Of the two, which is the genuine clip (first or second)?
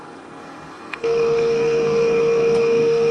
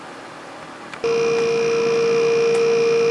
second